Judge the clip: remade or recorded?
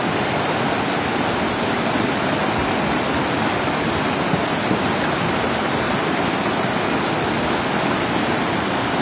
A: recorded